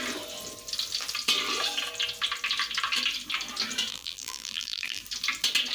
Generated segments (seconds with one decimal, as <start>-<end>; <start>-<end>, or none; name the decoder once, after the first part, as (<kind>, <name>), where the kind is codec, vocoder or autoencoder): 3.9-5.0 (vocoder, BigVGAN v2)